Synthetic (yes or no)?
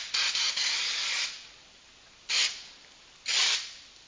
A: no